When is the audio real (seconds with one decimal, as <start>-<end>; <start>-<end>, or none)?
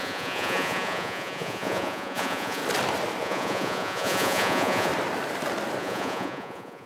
2.6-3.2; 4.9-5.8